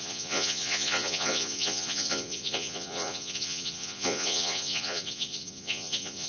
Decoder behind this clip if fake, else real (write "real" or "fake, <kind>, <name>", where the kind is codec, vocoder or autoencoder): fake, vocoder, Vocos